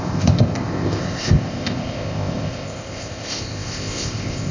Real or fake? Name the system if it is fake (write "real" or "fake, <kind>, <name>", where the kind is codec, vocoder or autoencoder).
fake, codec, ZipCodec